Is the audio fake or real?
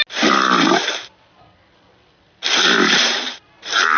real